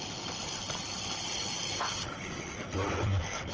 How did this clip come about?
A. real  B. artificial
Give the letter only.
A